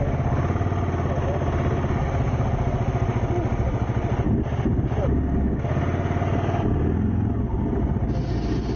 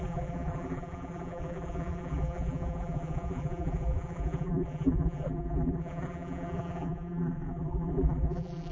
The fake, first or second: second